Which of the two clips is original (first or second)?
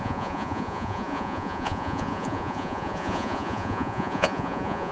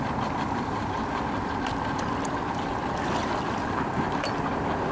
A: second